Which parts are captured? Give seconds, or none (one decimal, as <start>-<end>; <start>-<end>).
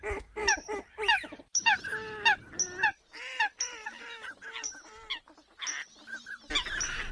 0.0-0.4; 1.4-7.1